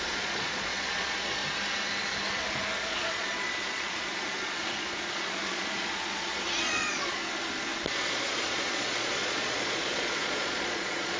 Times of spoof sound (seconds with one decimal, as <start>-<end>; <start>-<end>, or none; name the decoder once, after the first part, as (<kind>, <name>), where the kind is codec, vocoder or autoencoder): 0.0-1.4 (vocoder, Vocos); 2.8-7.2; 7.9-11.2